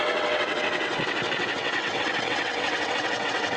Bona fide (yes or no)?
no